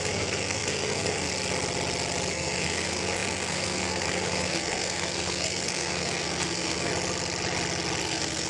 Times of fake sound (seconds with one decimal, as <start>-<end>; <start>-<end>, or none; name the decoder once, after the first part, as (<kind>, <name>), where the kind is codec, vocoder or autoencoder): 0.0-1.3 (codec, SNAC); 2.3-6.9; 8.0-8.5